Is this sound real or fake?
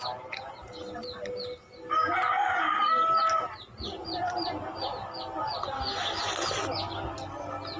real